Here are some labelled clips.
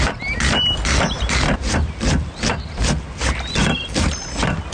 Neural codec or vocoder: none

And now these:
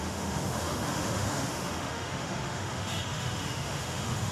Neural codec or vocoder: autoencoder, DAC-VAE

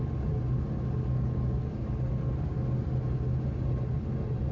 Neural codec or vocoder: none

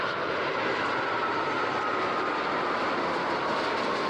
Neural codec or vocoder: none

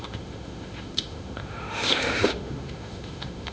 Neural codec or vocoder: autoencoder, DAC-VAE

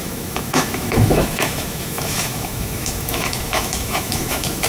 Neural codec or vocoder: autoencoder, DAC-VAE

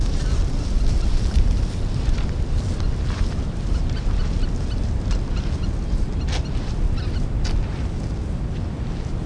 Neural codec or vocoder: none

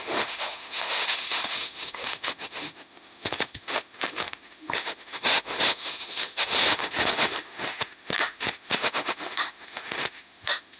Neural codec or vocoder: autoencoder, DAC-VAE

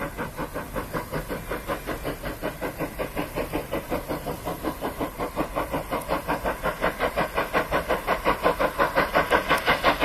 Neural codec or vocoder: none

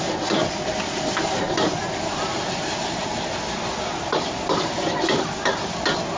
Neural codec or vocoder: none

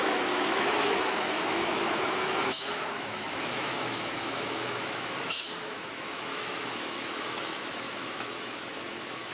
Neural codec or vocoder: autoencoder, DAC-VAE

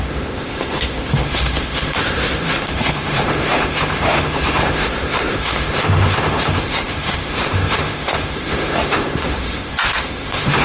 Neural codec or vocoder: autoencoder, DAC-VAE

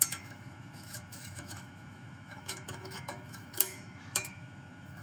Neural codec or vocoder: autoencoder, DAC-VAE